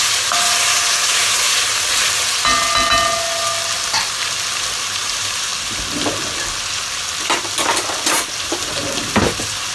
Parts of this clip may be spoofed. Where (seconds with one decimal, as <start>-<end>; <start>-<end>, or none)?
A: 0.0-2.5; 4.8-5.5; 9.1-9.7